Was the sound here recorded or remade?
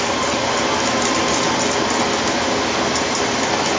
recorded